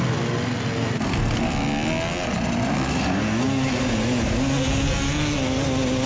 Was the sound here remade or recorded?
recorded